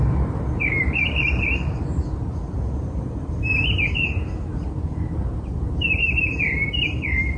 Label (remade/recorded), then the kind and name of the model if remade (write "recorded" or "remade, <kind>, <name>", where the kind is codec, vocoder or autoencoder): remade, vocoder, BigVGAN v2